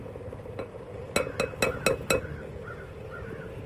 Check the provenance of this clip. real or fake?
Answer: real